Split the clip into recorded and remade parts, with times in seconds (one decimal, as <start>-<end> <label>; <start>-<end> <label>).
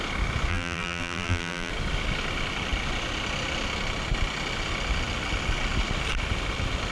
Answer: 0.0-0.5 recorded; 0.5-1.7 remade; 1.7-6.9 recorded